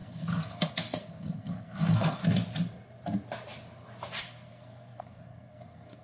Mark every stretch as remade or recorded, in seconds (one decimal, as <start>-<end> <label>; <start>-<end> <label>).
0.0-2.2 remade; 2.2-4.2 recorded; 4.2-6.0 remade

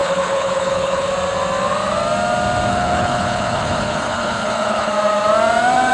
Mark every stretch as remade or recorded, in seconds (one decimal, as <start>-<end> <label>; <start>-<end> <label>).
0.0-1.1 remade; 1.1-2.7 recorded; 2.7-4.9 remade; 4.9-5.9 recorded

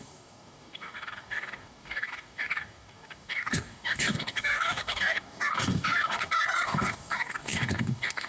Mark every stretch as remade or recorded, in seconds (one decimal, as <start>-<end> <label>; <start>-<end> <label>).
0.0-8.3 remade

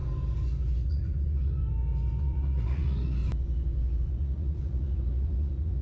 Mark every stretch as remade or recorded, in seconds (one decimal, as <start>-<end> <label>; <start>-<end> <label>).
0.0-0.9 recorded; 0.9-1.6 remade; 1.6-2.2 recorded; 2.2-3.2 remade; 3.2-4.1 recorded; 4.1-5.8 remade

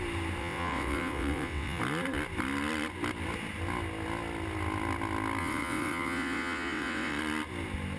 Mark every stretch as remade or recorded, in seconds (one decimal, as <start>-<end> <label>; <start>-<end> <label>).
0.0-0.4 recorded; 0.4-1.8 remade; 1.8-5.4 recorded; 5.4-7.2 remade; 7.2-8.0 recorded